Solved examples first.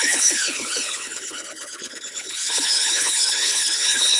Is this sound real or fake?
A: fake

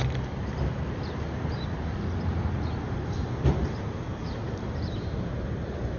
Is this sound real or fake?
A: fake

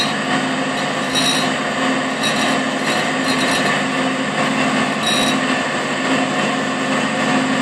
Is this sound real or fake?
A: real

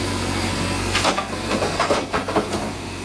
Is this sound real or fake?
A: fake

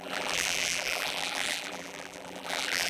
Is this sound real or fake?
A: fake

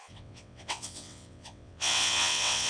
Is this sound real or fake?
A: fake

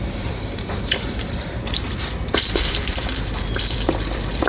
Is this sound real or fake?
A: fake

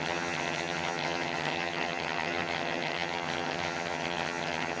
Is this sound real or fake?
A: fake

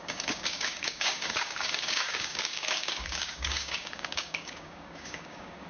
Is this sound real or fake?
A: fake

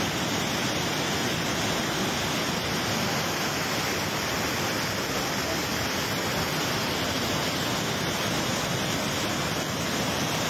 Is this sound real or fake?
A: real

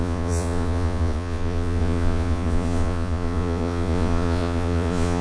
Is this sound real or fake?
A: fake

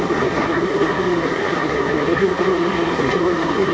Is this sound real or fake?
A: fake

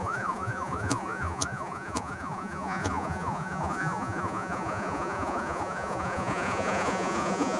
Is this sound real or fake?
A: fake